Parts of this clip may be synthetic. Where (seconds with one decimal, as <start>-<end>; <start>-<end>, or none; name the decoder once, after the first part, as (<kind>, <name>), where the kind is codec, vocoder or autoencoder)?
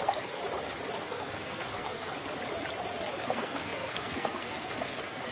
0.0-0.4 (codec, SNAC); 1.0-2.1; 3.2-5.3